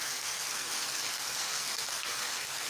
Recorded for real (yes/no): no